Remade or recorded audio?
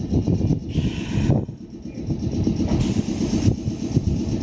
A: recorded